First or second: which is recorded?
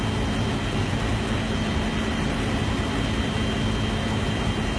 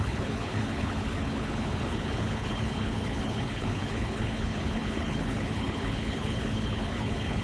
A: first